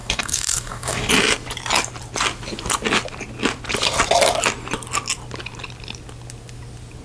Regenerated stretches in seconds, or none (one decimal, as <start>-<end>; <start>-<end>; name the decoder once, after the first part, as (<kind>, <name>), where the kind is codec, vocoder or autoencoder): 0.0-1.1 (codec, DAC)